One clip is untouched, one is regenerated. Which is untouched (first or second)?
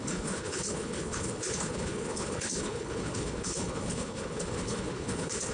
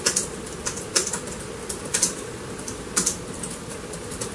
second